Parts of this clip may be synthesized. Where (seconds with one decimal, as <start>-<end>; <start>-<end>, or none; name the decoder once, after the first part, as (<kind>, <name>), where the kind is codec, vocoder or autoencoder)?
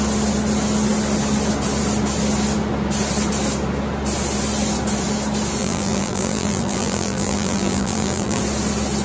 5.6-8.4 (vocoder, BigVGAN v2)